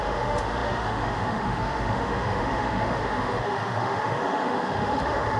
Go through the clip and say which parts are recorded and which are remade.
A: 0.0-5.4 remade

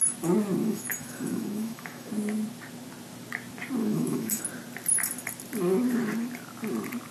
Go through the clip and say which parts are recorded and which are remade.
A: 0.0-0.6 recorded; 0.6-2.1 remade; 2.1-3.8 recorded; 3.8-4.4 remade; 4.4-7.1 recorded

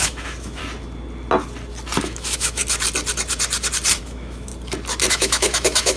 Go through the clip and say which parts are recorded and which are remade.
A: 0.0-0.6 remade; 0.6-2.0 recorded; 2.0-2.6 remade; 2.6-4.0 recorded; 4.0-4.5 remade; 4.5-5.1 recorded; 5.1-6.0 remade

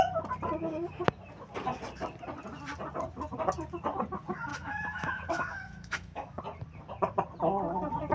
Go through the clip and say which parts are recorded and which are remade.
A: 0.0-4.5 recorded; 4.5-6.4 remade; 6.4-8.1 recorded

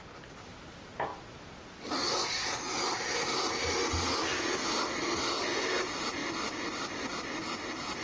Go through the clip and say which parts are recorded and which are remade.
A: 0.0-8.0 recorded

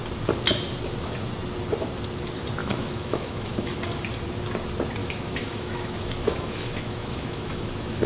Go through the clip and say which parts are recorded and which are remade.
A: 0.0-2.6 recorded; 2.6-3.8 remade; 3.8-5.0 recorded; 5.0-8.1 remade

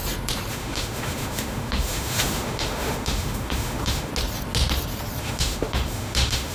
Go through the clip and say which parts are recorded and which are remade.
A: 0.0-0.5 recorded; 0.5-4.1 remade; 4.1-5.2 recorded; 5.2-6.5 remade